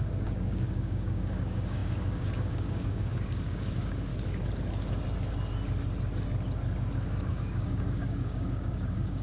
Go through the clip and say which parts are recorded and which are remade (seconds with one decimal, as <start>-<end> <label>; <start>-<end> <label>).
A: 0.0-4.1 remade; 4.1-7.3 recorded; 7.3-9.2 remade